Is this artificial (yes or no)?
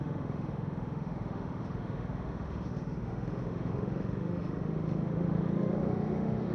yes